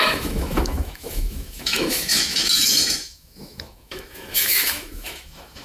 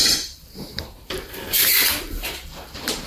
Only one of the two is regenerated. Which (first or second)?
first